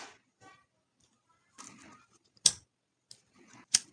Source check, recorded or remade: recorded